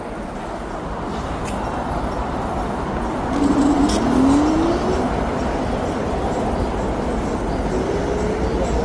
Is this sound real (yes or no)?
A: yes